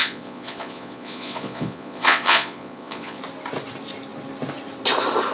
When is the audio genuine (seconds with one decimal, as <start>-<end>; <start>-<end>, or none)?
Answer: 3.2-5.3